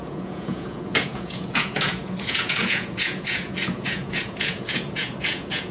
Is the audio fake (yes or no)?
yes